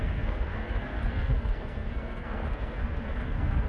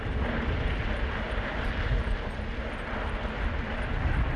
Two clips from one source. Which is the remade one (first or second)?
first